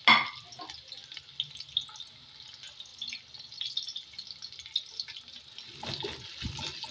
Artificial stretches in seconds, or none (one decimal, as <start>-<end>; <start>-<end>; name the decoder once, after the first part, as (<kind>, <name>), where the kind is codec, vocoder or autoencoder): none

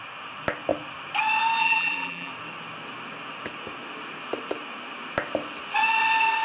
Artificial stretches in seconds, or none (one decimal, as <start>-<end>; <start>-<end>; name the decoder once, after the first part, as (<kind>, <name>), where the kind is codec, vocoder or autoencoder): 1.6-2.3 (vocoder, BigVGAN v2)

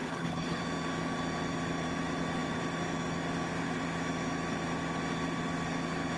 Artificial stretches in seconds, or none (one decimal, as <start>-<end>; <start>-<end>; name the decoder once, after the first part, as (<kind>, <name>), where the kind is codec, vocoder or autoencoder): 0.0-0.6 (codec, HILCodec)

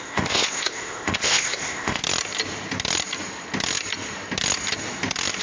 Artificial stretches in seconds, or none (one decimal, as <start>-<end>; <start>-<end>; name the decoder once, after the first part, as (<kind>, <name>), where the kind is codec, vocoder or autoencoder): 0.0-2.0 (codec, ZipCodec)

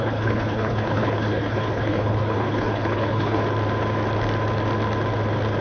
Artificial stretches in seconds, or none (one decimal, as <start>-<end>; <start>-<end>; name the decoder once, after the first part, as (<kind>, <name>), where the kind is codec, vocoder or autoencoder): 0.0-3.4 (codec, HILCodec)

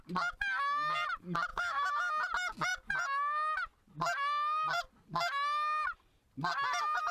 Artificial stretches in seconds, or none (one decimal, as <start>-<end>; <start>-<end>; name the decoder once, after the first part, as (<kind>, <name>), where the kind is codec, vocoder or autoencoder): 1.5-2.1 (autoencoder, DAC-VAE)

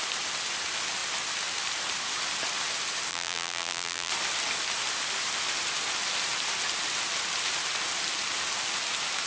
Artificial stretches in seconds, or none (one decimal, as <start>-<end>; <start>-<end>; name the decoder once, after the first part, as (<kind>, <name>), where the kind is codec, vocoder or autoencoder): 3.1-4.1 (vocoder, BigVGAN v2)

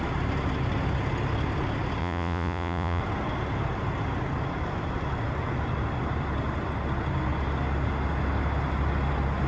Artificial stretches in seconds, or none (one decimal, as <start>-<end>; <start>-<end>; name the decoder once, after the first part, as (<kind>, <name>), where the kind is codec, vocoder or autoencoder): 2.0-3.0 (vocoder, Vocos)